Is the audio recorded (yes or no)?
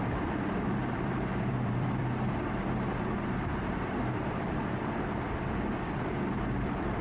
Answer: no